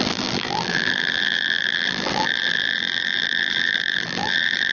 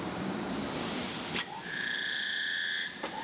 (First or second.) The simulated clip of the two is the first